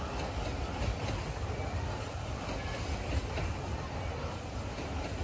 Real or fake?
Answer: real